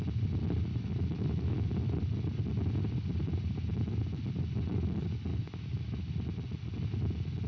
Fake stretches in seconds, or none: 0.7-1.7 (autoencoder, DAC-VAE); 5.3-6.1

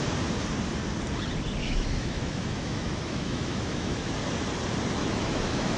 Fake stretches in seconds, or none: 1.6-4.1 (autoencoder, DAC-VAE); 5.0-5.8

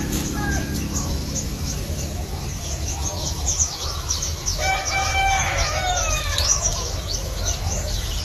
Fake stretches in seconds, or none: 0.0-8.2 (autoencoder, DAC-VAE)

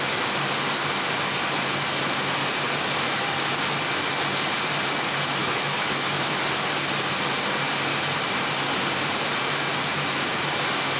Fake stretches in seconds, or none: 5.4-6.4 (autoencoder, DAC-VAE)

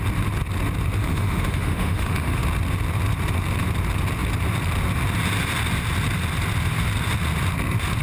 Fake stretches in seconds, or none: 1.0-2.4 (autoencoder, DAC-VAE)